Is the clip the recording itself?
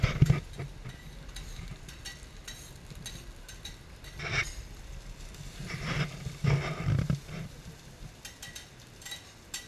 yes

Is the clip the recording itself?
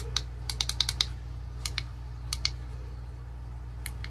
yes